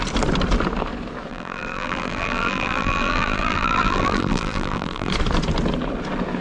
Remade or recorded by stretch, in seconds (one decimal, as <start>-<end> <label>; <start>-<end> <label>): 0.0-1.3 recorded; 1.3-5.1 remade; 5.1-6.4 recorded